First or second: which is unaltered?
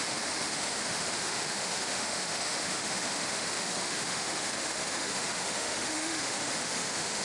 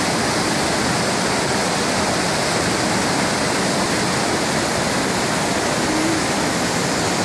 second